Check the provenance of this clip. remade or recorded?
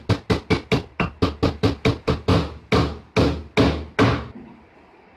recorded